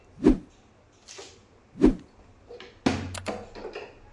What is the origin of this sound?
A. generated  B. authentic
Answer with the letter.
B